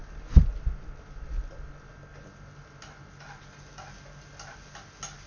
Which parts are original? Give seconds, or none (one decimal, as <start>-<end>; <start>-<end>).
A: 0.0-5.3